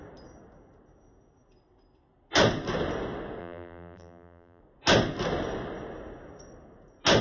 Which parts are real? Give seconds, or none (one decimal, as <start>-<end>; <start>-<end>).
0.0-3.4; 4.6-7.2